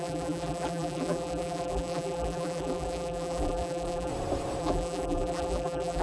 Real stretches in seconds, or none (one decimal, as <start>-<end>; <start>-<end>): 4.1-4.6